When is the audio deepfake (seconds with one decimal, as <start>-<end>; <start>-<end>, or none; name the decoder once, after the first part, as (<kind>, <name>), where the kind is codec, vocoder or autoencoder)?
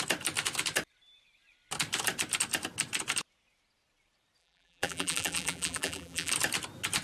4.4-6.3 (vocoder, BigVGAN v2)